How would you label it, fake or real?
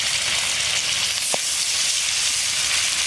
real